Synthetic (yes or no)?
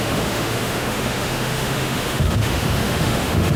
yes